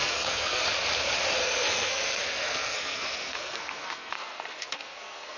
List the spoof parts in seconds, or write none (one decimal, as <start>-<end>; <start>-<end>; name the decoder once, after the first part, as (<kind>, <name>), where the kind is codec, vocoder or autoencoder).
0.0-0.6 (codec, SNAC); 1.4-5.4